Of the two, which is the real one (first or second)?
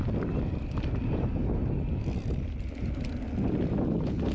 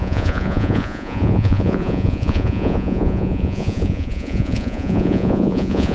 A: first